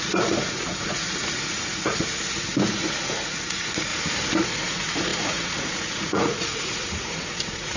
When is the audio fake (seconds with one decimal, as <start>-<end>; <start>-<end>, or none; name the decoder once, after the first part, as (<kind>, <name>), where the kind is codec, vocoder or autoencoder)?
0.0-3.9 (vocoder, Vocos); 4.4-7.8